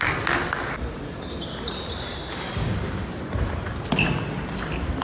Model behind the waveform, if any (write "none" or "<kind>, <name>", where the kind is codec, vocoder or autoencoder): none